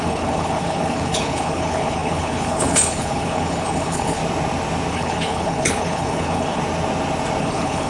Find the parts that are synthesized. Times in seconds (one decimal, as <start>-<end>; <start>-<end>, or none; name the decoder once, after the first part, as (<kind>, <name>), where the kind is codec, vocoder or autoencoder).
0.0-4.2 (codec, HILCodec); 4.9-6.6; 7.4-7.9